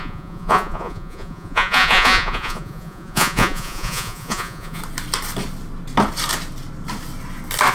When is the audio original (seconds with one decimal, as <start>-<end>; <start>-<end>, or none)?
4.8-7.7